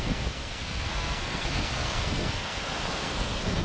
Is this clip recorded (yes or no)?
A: no